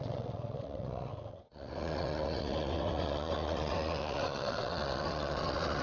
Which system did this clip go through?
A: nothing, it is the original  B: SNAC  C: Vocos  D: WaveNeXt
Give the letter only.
D